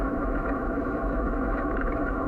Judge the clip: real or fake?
fake